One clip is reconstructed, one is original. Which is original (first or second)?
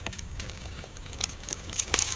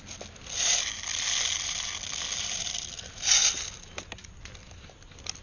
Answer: second